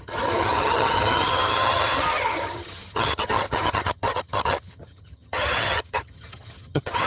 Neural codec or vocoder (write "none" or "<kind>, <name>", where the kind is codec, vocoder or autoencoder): vocoder, HiFi-GAN